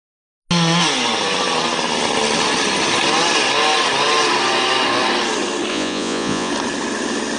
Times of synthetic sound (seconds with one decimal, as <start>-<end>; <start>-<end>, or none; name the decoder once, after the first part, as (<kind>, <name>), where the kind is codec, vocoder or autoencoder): 5.7-6.5 (vocoder, Vocos)